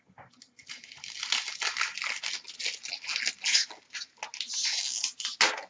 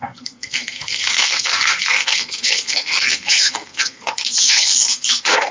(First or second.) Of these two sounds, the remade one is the second